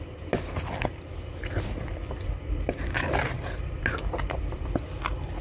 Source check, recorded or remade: remade